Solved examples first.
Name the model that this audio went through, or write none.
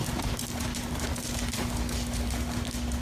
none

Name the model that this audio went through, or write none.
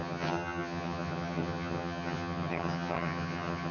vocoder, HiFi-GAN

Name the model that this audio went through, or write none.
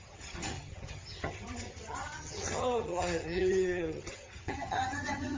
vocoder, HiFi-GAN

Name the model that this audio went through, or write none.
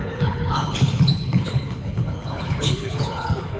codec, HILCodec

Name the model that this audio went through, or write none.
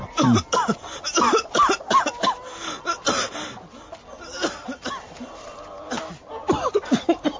none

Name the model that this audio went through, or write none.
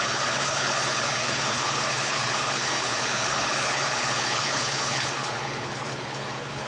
codec, HILCodec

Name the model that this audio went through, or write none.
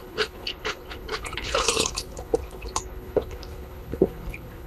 codec, HILCodec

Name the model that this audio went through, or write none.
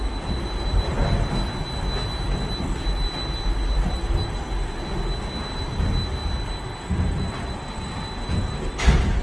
none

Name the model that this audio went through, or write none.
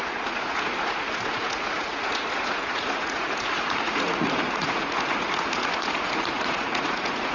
vocoder, Vocos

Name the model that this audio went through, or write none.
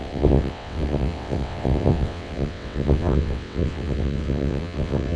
vocoder, WaveNeXt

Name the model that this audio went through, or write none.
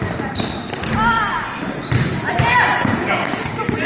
none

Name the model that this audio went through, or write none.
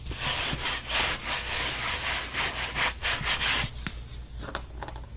none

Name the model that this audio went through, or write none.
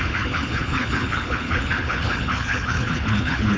codec, HILCodec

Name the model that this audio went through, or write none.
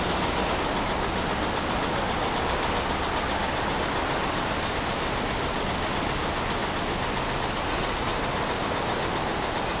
none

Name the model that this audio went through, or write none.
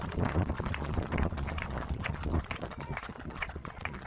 vocoder, Vocos